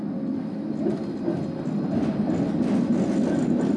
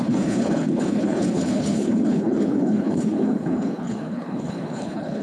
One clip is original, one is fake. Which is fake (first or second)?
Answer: second